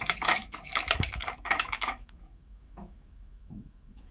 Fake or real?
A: fake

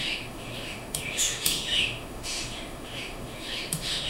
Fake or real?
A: fake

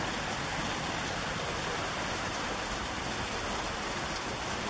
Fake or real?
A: real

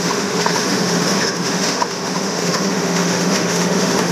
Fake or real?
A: fake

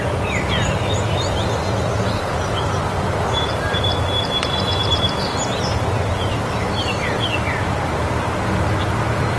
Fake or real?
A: real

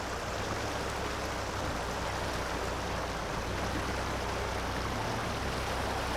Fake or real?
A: real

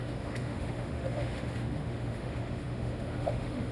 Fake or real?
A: fake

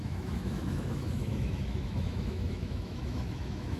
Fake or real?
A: fake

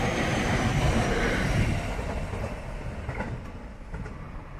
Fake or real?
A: real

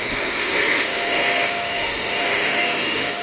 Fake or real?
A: fake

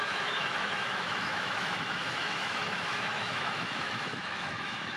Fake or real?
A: fake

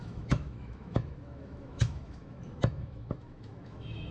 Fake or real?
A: fake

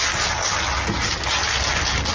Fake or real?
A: real